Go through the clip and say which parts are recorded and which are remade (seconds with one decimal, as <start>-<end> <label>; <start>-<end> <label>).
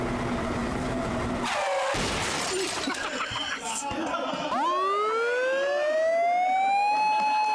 0.0-0.6 recorded; 0.6-1.4 remade; 1.4-7.5 recorded